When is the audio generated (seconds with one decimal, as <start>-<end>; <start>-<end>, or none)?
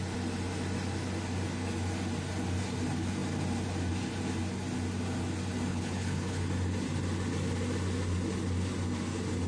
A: 5.7-6.4